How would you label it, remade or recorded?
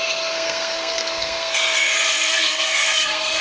remade